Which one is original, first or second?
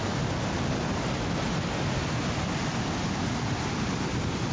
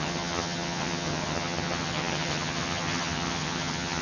first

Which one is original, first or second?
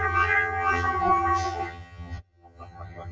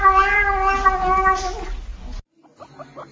second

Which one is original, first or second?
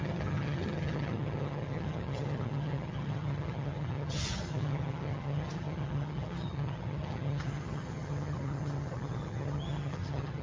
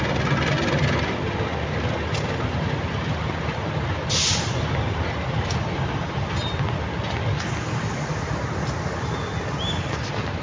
second